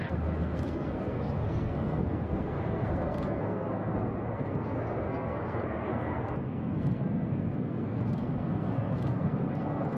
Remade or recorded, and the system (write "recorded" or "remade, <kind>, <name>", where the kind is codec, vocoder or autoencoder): remade, codec, SNAC